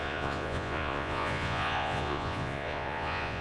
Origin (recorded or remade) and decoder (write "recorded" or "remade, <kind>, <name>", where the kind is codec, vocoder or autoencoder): remade, vocoder, Vocos